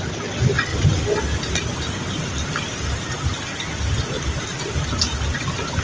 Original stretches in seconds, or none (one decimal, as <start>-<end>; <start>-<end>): 0.0-5.8